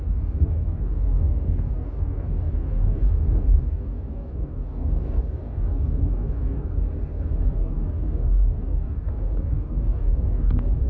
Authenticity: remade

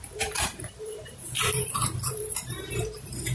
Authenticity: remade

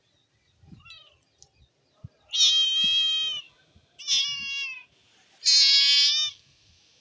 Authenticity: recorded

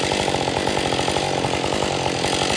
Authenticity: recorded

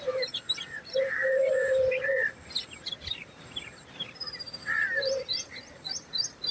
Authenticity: remade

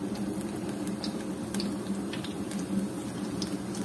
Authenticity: recorded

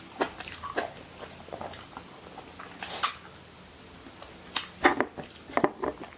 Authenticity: recorded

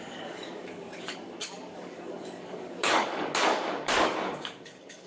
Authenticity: remade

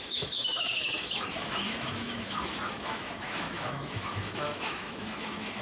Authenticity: remade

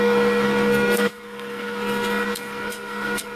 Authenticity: remade